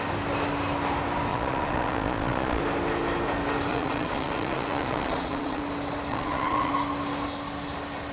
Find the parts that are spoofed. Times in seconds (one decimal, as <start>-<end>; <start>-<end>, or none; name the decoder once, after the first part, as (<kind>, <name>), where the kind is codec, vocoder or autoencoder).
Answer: 1.3-2.6 (vocoder, Vocos); 3.7-5.6; 6.1-6.7